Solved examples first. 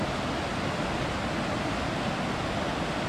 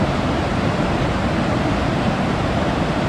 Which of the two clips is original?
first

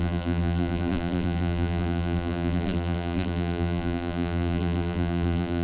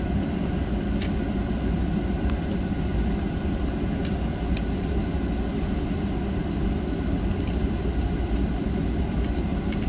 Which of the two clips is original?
second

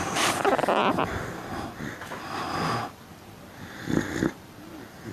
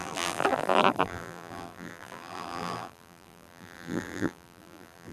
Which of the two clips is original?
first